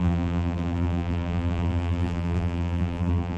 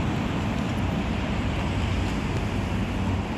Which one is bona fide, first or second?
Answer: second